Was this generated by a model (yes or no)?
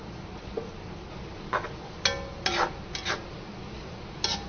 no